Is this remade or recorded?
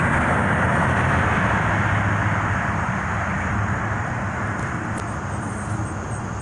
recorded